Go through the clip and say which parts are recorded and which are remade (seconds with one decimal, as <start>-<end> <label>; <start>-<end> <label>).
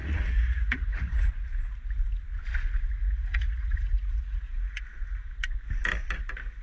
0.0-1.3 remade; 1.3-3.0 recorded; 3.0-4.8 remade; 4.8-6.6 recorded